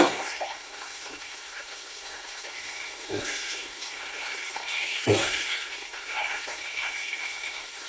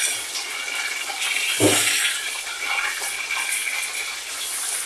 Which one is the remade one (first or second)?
first